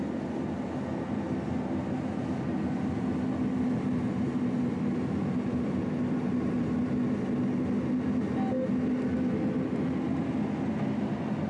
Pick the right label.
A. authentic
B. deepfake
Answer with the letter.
A